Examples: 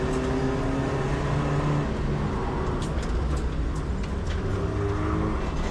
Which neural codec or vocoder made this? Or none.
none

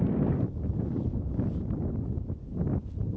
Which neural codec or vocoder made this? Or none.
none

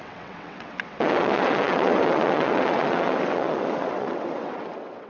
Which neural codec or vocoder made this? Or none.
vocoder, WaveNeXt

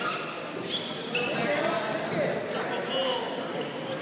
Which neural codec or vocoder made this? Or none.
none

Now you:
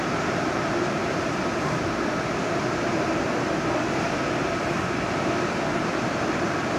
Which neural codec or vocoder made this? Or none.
vocoder, BigVGAN v2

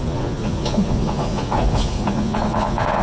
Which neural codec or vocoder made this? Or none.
vocoder, Vocos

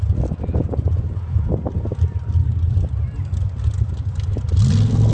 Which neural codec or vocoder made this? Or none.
none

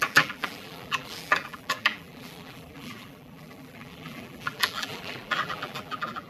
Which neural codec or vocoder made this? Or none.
vocoder, BigVGAN v2